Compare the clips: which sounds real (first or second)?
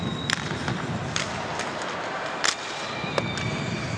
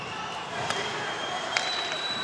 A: first